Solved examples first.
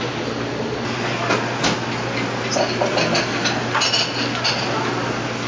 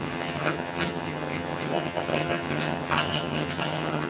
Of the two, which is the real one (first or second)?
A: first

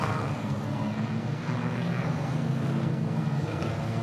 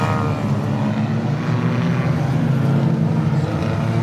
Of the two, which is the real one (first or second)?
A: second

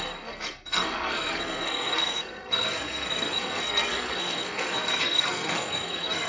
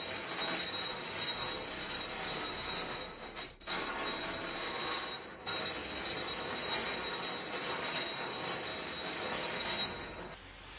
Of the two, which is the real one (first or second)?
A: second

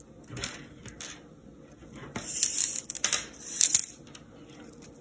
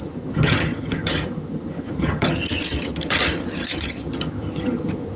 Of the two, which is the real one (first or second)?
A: first